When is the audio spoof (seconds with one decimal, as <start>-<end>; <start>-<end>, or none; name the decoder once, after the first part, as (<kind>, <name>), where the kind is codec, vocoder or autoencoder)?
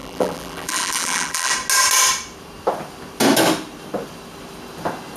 0.0-1.5 (vocoder, BigVGAN v2)